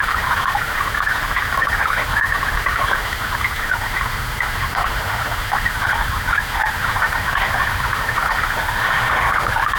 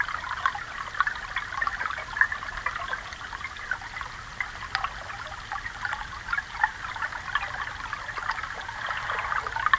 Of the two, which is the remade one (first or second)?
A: first